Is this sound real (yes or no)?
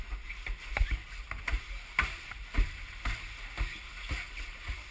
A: yes